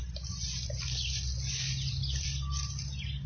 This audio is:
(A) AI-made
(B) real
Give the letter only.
B